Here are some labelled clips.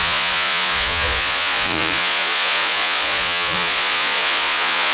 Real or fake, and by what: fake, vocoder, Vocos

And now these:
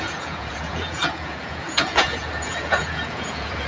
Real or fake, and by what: fake, vocoder, Vocos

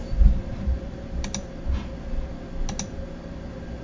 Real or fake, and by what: real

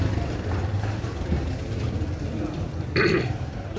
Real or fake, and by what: real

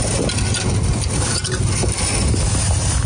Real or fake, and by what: real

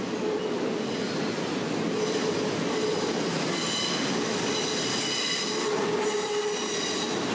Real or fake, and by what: real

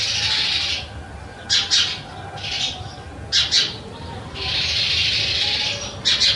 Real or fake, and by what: real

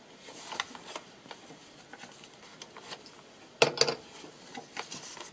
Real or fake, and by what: real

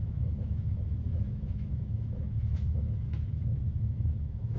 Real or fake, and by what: fake, autoencoder, DAC-VAE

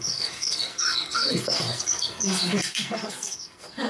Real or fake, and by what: fake, codec, SNAC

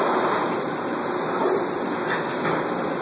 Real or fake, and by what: real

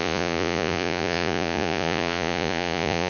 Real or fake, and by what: fake, vocoder, Vocos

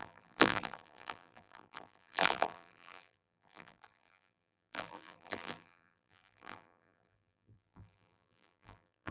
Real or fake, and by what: fake, vocoder, BigVGAN v2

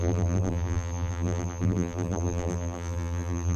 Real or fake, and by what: fake, vocoder, BigVGAN v2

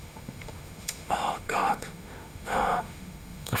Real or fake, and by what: fake, autoencoder, DAC-VAE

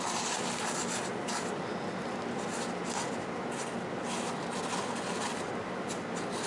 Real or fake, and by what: real